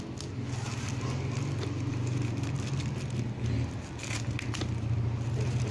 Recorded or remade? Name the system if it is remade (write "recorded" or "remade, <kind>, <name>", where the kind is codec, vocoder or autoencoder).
recorded